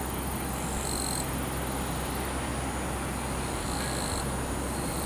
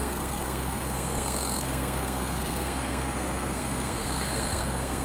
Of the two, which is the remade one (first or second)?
second